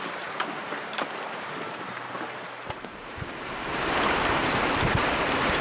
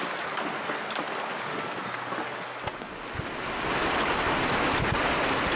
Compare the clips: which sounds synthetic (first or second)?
first